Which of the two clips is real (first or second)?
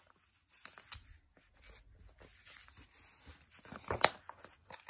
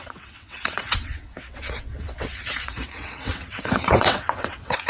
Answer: first